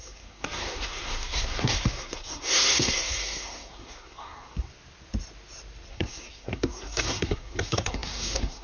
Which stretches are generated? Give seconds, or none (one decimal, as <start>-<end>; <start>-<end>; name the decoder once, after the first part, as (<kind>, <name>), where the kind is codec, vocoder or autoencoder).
0.0-4.7 (codec, SNAC); 5.9-8.6